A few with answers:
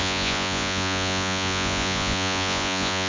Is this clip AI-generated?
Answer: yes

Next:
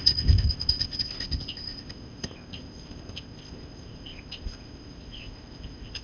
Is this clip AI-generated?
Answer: yes